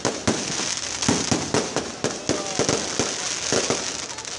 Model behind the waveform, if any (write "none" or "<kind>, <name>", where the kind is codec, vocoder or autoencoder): none